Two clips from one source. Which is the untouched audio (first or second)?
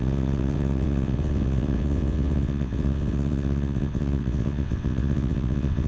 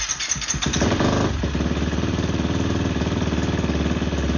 second